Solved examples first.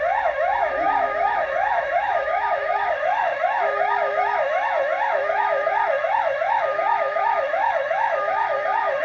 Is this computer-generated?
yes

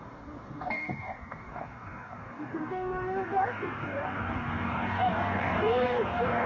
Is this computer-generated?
yes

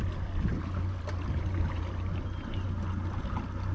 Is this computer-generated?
no